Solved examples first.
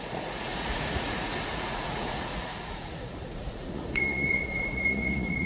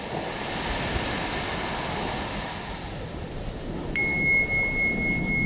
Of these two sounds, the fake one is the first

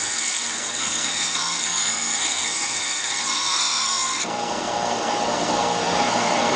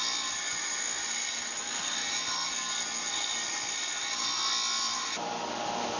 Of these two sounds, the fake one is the first